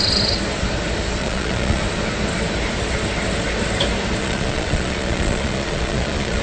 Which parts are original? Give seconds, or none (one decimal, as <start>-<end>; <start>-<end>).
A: 0.0-1.2; 1.8-4.2